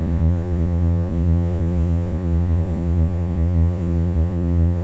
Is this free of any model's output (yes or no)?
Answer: no